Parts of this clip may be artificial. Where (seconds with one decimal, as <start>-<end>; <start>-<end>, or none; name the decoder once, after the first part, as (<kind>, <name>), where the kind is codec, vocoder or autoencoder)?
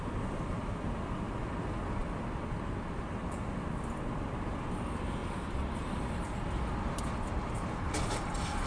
5.2-6.2 (vocoder, BigVGAN v2)